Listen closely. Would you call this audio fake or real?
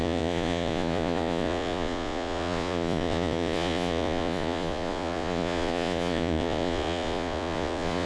fake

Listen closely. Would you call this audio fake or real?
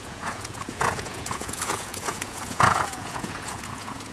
fake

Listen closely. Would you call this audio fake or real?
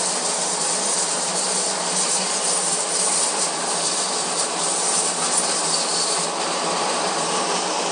fake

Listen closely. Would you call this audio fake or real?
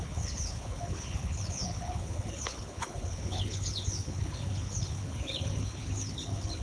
fake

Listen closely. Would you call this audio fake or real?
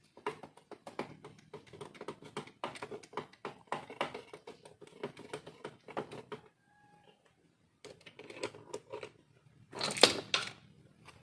real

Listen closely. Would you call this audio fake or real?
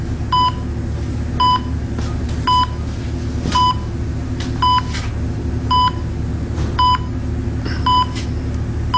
real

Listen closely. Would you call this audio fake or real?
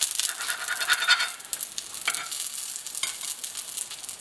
real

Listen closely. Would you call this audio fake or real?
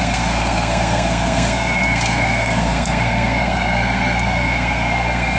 fake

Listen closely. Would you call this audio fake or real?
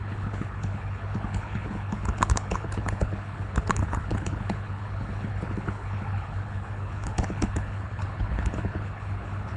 fake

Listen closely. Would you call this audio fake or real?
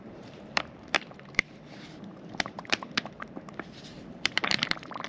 fake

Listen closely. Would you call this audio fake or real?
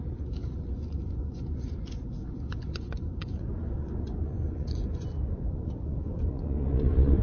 fake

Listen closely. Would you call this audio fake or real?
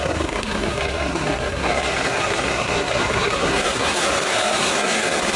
fake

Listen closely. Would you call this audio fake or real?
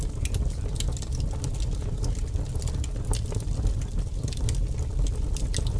real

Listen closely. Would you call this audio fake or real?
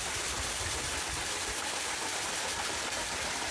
real